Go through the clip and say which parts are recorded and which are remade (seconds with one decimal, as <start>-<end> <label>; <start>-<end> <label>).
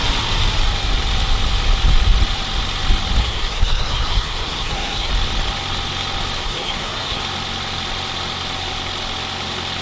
0.0-3.2 recorded; 3.2-5.1 remade; 5.1-6.4 recorded; 6.4-7.2 remade; 7.2-9.8 recorded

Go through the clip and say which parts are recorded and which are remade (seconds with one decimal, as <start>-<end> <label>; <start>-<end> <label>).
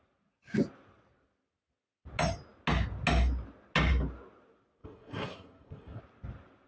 0.0-4.8 recorded; 4.8-6.0 remade; 6.0-6.7 recorded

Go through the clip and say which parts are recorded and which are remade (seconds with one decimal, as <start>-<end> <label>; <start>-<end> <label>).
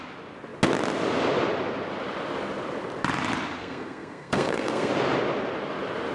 0.0-3.6 recorded; 3.6-4.9 remade; 4.9-6.1 recorded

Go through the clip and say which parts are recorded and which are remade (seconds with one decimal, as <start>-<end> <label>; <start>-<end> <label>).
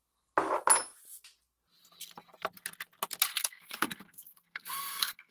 0.0-3.3 recorded; 3.3-5.3 remade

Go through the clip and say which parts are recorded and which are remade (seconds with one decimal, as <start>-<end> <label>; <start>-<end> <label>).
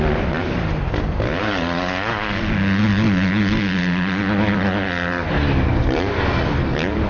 0.0-7.1 recorded